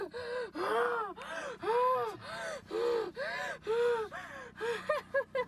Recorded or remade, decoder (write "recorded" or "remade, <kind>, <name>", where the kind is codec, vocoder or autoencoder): recorded